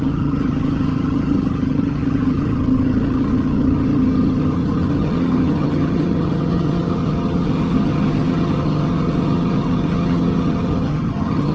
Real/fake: fake